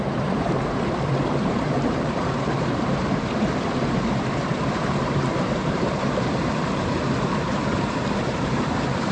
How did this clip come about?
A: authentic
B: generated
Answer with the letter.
B